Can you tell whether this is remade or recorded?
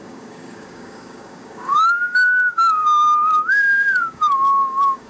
remade